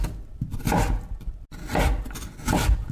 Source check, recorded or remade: recorded